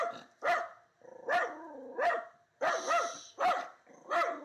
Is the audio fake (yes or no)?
no